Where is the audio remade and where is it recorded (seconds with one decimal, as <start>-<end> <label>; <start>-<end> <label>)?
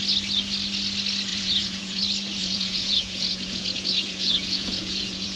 0.0-1.3 recorded; 1.3-2.0 remade; 2.0-2.4 recorded; 2.4-5.4 remade